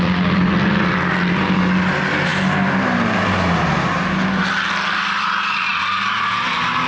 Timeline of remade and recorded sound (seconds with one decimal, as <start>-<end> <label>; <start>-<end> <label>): 0.0-6.9 recorded